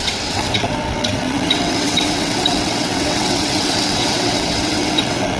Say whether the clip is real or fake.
fake